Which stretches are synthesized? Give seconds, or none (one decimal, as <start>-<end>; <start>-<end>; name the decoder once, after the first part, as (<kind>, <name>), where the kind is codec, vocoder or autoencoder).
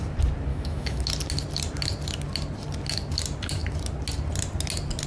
0.5-1.0 (autoencoder, DAC-VAE)